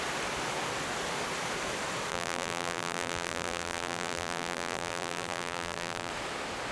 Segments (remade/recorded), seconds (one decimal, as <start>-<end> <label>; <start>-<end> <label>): 0.0-2.1 recorded; 2.1-6.1 remade; 6.1-6.7 recorded